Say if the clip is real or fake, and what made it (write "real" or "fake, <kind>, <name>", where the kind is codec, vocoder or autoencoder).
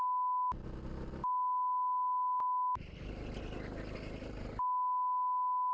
real